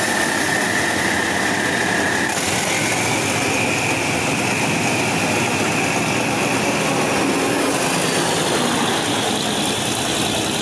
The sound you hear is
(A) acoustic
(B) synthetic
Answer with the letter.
A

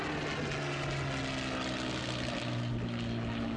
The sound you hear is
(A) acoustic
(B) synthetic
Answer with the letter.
A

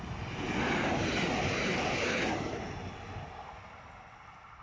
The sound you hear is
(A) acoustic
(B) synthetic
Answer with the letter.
A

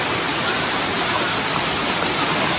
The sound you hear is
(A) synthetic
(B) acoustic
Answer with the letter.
B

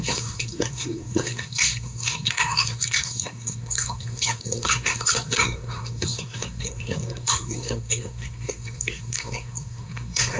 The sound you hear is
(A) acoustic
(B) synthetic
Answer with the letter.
B